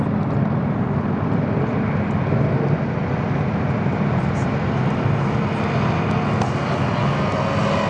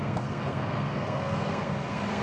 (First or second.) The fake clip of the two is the second